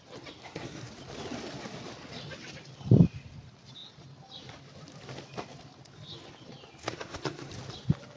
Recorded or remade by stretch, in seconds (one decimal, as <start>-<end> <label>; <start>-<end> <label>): 0.0-0.4 recorded; 0.4-0.9 remade; 0.9-6.8 recorded; 6.8-7.5 remade; 7.5-8.2 recorded